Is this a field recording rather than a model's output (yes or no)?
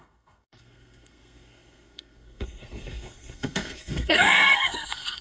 no